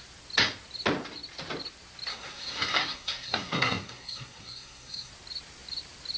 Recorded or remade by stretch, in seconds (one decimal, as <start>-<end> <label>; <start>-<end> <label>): 0.0-2.1 recorded; 2.1-5.1 remade; 5.1-6.2 recorded